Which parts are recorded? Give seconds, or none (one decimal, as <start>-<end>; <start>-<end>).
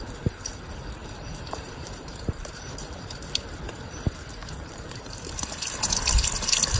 0.0-1.0; 3.3-4.4; 5.4-6.8